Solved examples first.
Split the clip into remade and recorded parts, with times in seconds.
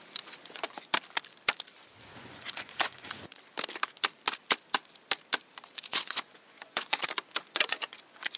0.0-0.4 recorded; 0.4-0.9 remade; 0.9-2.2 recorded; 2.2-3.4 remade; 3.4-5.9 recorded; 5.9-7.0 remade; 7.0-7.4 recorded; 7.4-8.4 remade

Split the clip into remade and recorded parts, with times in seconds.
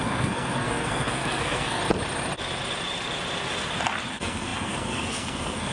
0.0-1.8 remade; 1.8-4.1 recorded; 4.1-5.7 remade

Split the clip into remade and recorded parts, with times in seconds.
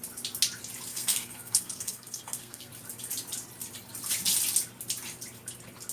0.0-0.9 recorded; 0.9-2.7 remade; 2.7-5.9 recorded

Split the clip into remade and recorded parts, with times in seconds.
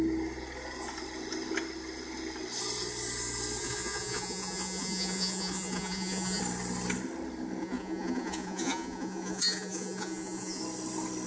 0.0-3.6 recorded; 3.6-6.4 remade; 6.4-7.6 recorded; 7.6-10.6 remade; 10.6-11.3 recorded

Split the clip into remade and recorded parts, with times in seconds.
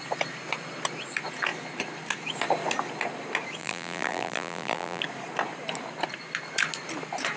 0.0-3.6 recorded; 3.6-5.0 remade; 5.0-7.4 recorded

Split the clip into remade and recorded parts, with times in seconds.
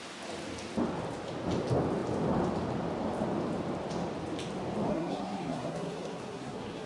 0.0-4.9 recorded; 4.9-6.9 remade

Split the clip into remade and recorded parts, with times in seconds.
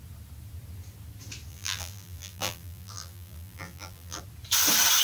0.0-1.5 recorded; 1.5-4.2 remade; 4.2-5.0 recorded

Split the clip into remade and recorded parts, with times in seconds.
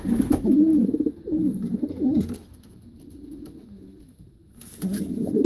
0.0-5.5 remade